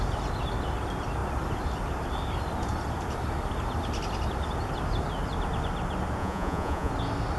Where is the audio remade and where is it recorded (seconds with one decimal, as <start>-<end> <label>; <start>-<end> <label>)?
0.0-6.2 recorded; 6.2-6.9 remade; 6.9-7.4 recorded